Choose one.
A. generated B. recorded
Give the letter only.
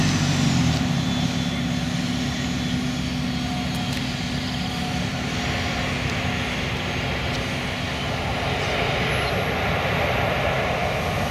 B